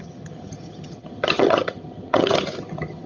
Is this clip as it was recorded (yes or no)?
no